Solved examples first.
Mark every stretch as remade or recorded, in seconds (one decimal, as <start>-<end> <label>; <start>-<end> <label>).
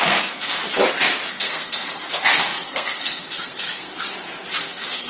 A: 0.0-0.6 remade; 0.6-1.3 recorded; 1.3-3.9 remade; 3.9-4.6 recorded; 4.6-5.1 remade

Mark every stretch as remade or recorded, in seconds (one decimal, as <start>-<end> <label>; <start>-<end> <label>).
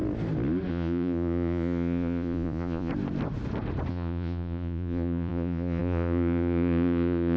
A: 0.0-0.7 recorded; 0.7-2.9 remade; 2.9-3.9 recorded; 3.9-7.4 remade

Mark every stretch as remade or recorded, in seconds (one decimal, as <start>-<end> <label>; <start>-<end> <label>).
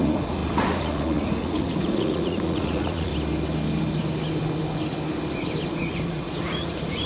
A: 0.0-3.1 remade; 3.1-5.7 recorded; 5.7-7.1 remade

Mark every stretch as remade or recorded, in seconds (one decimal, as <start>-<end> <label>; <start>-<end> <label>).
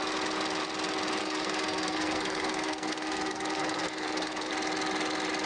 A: 0.0-1.2 recorded; 1.2-4.5 remade; 4.5-5.5 recorded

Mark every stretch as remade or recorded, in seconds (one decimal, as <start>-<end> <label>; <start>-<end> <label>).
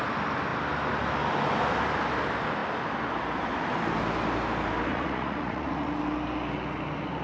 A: 0.0-4.9 recorded; 4.9-5.9 remade; 5.9-7.2 recorded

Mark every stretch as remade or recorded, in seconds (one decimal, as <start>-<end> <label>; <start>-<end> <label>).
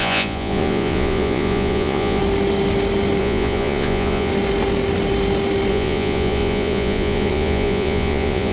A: 0.0-2.2 remade; 2.2-3.2 recorded; 3.2-4.3 remade; 4.3-5.7 recorded; 5.7-8.5 remade